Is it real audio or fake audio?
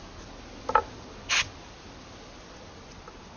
real